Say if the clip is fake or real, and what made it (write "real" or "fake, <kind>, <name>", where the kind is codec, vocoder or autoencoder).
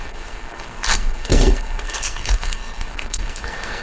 fake, codec, SNAC